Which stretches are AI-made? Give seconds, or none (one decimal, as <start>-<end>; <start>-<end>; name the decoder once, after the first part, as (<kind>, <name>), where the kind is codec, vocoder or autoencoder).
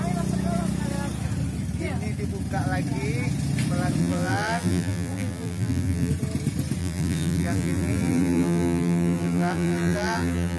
4.0-6.1 (vocoder, BigVGAN v2); 6.8-10.6